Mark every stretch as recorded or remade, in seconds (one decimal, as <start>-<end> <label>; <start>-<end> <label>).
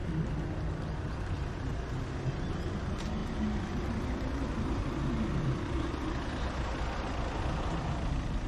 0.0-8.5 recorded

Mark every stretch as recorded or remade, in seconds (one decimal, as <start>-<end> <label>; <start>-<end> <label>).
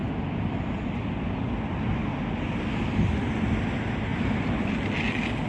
0.0-4.1 recorded; 4.1-4.7 remade; 4.7-5.5 recorded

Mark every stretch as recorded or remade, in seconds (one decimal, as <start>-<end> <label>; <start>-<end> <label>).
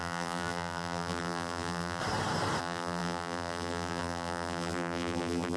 0.0-2.0 remade; 2.0-2.6 recorded; 2.6-5.6 remade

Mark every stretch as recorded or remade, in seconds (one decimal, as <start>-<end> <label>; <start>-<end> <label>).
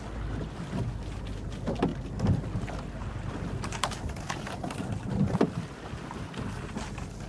0.0-7.3 recorded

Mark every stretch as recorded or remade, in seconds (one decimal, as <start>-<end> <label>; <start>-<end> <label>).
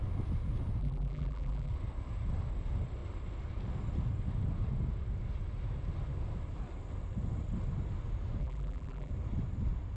0.0-0.8 recorded; 0.8-1.7 remade; 1.7-8.4 recorded; 8.4-9.1 remade; 9.1-10.0 recorded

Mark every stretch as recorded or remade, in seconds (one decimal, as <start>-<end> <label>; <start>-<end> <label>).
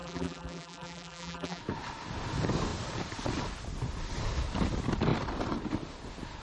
0.0-1.6 remade; 1.6-6.4 recorded